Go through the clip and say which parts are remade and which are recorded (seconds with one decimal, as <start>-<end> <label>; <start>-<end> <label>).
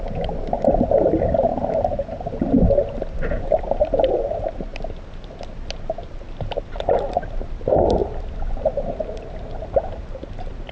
0.0-1.5 remade; 1.5-3.6 recorded; 3.6-4.7 remade; 4.7-6.6 recorded; 6.6-10.7 remade